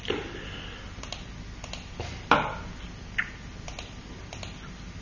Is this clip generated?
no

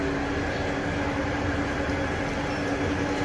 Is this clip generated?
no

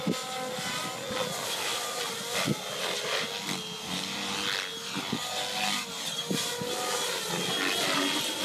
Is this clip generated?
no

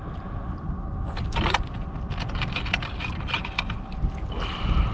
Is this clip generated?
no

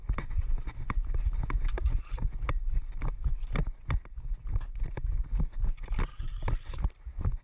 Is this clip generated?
no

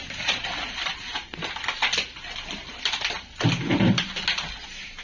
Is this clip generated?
no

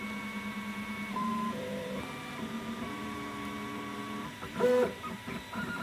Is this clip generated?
yes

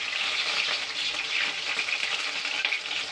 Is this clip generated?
yes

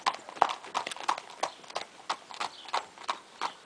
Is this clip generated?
no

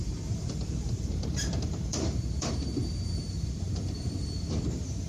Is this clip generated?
yes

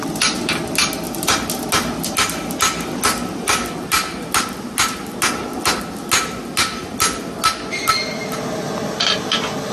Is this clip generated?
no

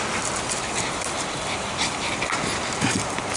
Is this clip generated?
no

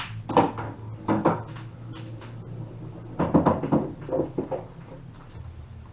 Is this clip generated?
no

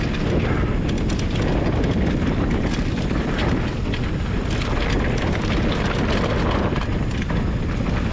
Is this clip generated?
no